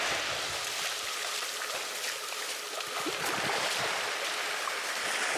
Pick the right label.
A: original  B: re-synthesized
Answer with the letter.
A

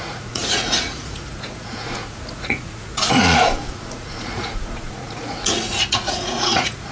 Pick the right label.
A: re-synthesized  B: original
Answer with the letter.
A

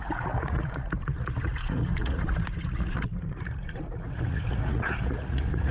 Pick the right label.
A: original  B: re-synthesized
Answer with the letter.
B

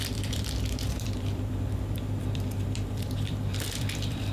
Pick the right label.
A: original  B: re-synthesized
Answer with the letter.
B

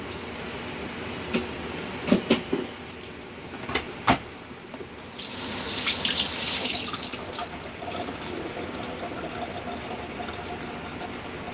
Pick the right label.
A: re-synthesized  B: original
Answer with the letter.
B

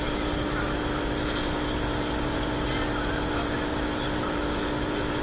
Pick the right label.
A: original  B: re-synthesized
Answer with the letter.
A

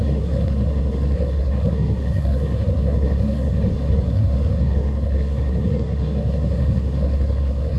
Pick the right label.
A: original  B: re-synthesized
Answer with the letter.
B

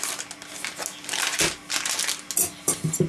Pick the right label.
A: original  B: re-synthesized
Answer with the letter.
A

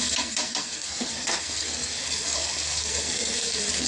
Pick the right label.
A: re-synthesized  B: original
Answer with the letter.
A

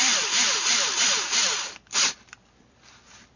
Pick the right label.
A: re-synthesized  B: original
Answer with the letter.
A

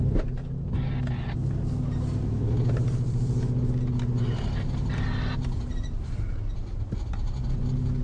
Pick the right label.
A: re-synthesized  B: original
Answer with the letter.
B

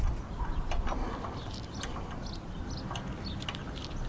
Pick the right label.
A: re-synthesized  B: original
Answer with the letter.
B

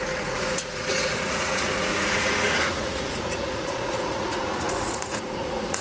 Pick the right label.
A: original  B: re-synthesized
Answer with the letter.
B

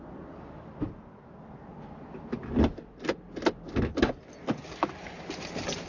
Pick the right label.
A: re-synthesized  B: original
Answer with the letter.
B